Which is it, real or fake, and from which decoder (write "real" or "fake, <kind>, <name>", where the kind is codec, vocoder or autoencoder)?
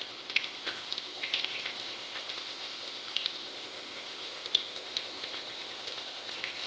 fake, codec, ZipCodec